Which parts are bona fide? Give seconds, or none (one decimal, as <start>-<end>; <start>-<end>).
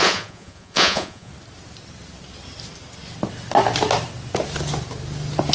1.3-5.5